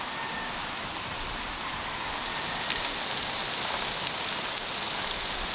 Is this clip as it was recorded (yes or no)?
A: yes